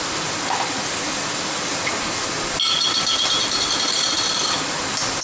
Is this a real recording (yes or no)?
yes